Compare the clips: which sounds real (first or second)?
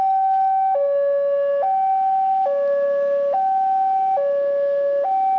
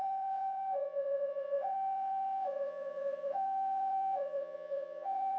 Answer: first